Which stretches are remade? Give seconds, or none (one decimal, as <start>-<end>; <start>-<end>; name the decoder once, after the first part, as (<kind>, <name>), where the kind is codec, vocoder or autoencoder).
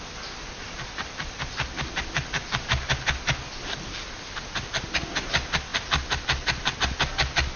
none